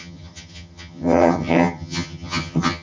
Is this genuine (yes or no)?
no